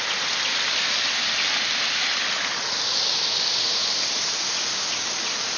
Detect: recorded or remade recorded